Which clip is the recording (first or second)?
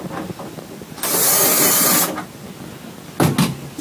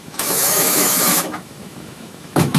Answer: first